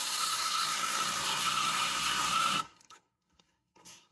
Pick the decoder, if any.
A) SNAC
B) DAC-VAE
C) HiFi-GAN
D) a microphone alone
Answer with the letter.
A